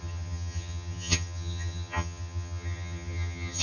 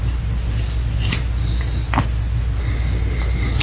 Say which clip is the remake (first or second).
first